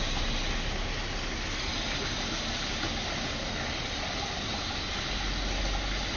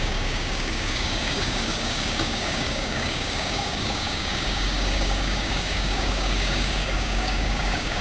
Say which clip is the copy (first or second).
second